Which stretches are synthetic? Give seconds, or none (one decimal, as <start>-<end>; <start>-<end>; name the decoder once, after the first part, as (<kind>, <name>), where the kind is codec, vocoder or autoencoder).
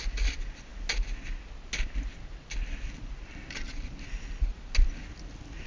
none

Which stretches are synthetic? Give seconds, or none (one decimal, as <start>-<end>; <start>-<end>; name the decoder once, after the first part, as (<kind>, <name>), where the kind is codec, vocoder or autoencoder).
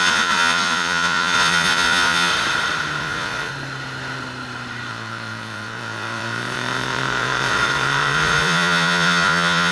0.0-2.3 (vocoder, Vocos); 3.0-3.5; 4.9-9.7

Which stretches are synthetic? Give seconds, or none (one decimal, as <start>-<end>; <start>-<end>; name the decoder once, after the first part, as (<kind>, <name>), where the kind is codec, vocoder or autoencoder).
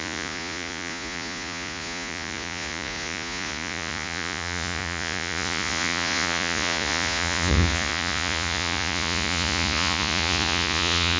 0.0-11.2 (vocoder, Vocos)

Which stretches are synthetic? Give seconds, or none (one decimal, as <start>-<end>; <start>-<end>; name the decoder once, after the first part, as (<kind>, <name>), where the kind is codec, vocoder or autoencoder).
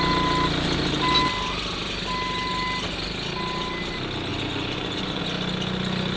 4.3-5.2 (vocoder, Vocos)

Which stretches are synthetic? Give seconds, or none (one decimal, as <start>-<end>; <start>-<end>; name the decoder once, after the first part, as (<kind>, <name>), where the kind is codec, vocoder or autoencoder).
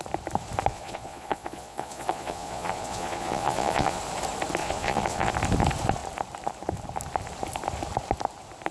0.7-4.0 (vocoder, Vocos); 4.6-5.3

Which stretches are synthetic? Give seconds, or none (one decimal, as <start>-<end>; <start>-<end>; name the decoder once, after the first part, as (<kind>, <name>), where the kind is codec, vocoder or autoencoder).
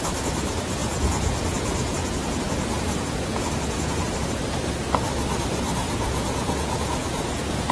0.8-4.0 (vocoder, Vocos); 5.8-7.7